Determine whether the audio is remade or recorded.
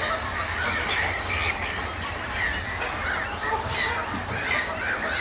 recorded